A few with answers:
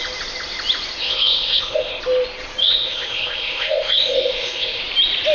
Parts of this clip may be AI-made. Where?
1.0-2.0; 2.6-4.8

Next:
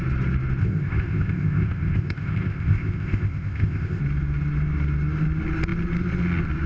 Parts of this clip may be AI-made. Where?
0.6-4.0

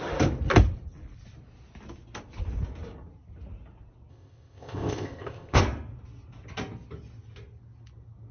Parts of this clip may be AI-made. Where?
4.1-5.6

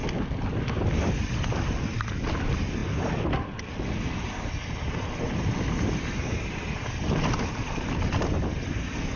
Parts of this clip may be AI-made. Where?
none

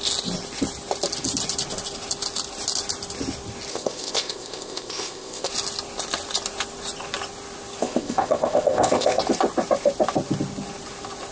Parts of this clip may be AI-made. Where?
3.7-5.5; 7.8-9.2

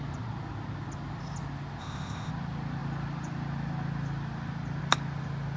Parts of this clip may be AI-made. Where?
1.8-2.3